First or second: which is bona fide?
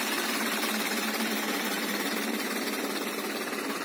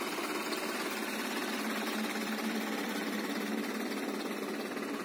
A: second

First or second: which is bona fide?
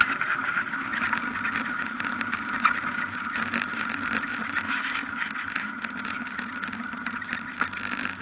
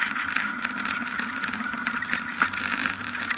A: first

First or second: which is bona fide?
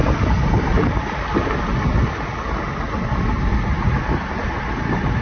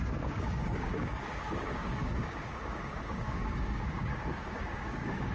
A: first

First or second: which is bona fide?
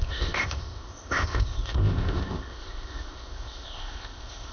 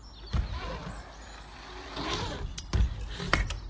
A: second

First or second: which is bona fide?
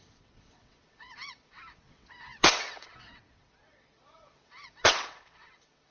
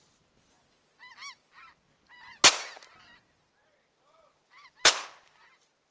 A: second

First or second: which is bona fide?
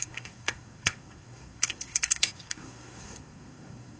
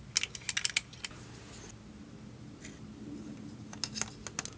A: second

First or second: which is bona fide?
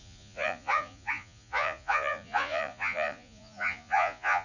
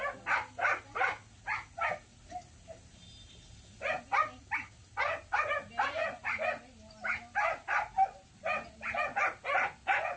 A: second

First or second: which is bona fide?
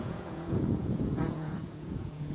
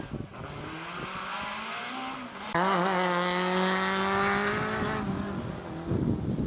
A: second